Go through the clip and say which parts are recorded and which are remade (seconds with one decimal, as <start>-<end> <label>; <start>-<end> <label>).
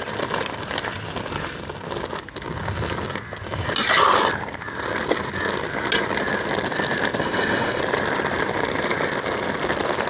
0.0-7.2 recorded; 7.2-7.8 remade; 7.8-10.1 recorded